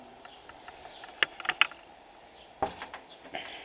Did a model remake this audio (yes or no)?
no